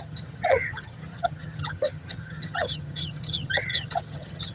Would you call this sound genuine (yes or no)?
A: no